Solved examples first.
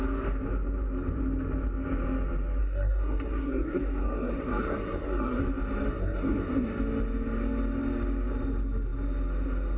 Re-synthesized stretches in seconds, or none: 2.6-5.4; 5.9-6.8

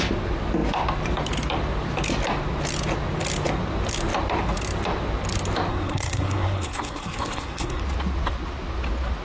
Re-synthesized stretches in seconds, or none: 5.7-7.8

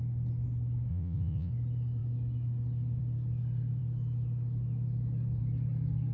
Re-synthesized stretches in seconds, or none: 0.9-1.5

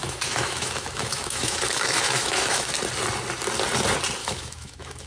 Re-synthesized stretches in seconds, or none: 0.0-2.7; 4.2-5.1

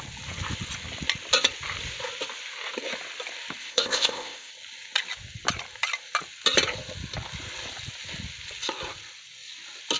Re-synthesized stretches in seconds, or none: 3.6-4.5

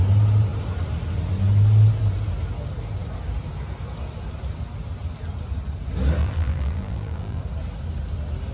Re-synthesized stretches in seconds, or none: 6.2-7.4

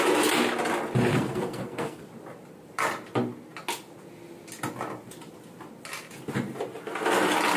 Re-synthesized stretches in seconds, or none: 1.1-2.0

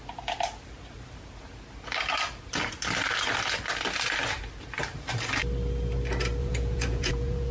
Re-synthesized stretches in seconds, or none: 6.4-7.5